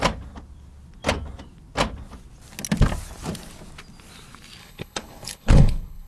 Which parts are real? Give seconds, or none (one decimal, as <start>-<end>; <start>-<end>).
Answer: 0.0-4.6